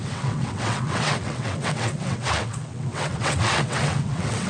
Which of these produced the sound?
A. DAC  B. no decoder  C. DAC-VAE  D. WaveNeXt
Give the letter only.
D